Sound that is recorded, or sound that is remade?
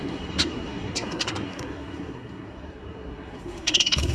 remade